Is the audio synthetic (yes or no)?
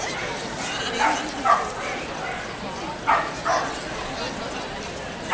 no